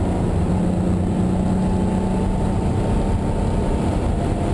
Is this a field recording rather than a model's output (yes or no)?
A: yes